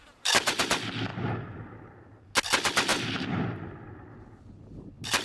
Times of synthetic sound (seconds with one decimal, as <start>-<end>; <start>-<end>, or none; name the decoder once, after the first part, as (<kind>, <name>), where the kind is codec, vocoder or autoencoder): 0.0-0.6 (vocoder, BigVGAN v2)